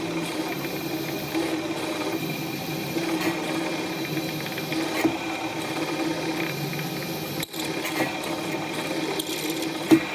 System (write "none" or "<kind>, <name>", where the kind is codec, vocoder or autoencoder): none